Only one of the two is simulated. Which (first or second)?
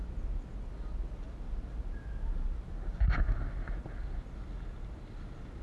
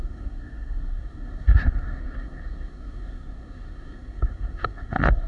second